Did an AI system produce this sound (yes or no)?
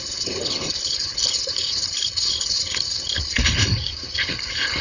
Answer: yes